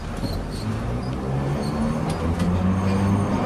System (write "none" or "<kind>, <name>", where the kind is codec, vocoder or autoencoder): none